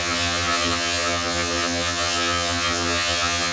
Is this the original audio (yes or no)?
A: no